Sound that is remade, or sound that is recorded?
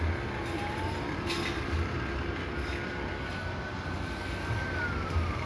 recorded